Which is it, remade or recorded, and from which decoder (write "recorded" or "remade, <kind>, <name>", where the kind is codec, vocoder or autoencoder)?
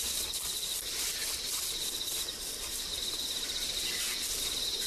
recorded